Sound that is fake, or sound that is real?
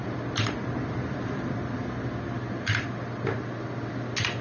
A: real